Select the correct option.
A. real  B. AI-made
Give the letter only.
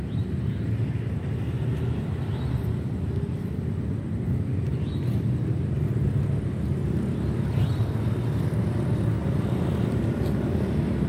A